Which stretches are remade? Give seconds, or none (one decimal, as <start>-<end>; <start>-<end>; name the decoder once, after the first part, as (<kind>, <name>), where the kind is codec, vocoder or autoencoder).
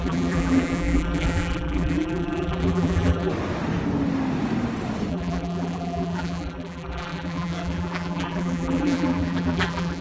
0.0-3.3 (vocoder, BigVGAN v2); 5.1-10.0